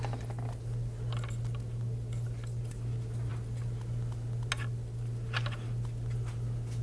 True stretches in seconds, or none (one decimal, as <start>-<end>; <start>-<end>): 0.0-6.8